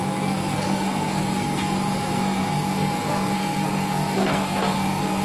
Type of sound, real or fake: fake